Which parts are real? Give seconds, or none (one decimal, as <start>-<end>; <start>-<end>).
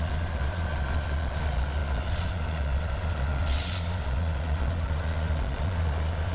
none